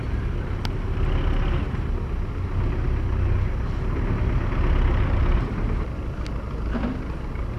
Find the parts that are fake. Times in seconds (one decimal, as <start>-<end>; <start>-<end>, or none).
0.0-0.6